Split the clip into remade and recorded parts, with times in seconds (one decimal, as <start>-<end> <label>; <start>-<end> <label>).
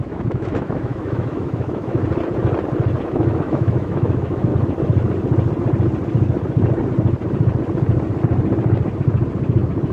0.0-2.0 remade; 2.0-3.0 recorded; 3.0-4.5 remade; 4.5-9.9 recorded